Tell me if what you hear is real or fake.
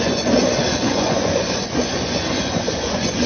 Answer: fake